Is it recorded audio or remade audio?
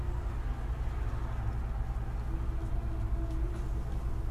recorded